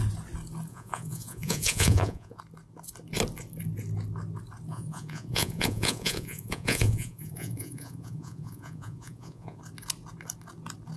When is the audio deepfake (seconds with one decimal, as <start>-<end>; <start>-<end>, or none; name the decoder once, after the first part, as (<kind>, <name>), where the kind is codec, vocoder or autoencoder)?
0.7-2.4 (vocoder, Vocos); 4.7-9.6